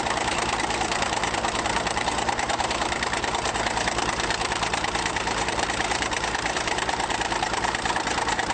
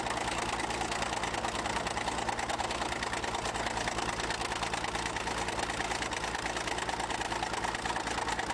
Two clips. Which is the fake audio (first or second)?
first